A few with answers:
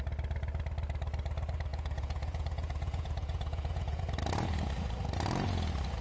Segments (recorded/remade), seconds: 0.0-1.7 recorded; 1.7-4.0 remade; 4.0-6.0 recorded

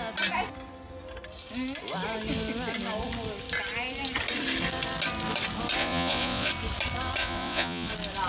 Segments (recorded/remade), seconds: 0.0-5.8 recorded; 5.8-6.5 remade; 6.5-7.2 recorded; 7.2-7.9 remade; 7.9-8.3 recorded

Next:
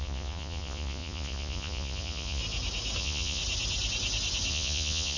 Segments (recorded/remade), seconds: 0.0-2.4 remade; 2.4-3.0 recorded; 3.0-3.4 remade; 3.4-4.5 recorded; 4.5-5.2 remade

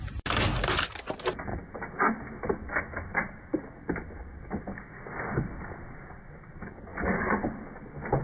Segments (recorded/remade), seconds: 0.0-6.9 recorded; 6.9-7.4 remade; 7.4-8.2 recorded

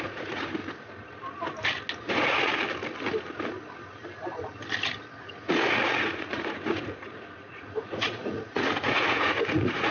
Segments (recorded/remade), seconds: 0.0-0.6 remade; 0.6-2.1 recorded; 2.1-2.5 remade; 2.5-5.2 recorded; 5.2-9.9 remade

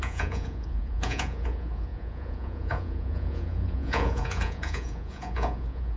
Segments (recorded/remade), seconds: 0.0-6.0 remade